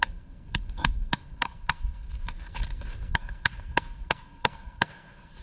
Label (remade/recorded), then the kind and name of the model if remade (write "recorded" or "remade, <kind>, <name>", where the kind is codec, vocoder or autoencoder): remade, codec, SNAC